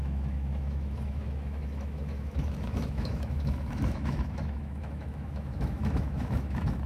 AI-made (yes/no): yes